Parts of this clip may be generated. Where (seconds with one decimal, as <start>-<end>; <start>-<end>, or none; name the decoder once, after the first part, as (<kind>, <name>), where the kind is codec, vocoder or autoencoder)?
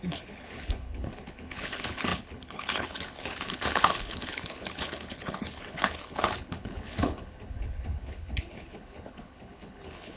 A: 0.0-10.2 (codec, HILCodec)